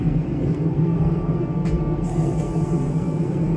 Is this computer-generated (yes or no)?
yes